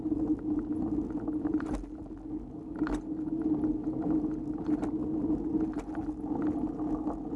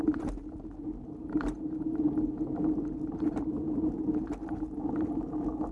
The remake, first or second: second